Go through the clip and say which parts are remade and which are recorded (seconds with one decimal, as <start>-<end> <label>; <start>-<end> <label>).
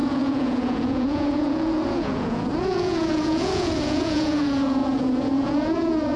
0.0-6.2 remade